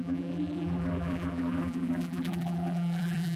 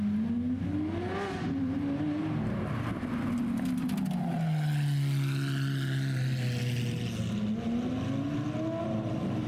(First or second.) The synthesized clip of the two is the first